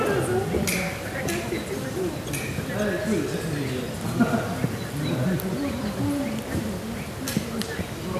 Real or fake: real